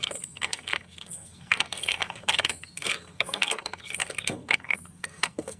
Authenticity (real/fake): fake